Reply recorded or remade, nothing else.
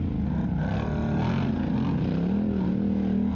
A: recorded